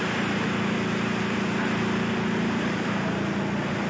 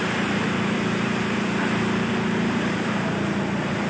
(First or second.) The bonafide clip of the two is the first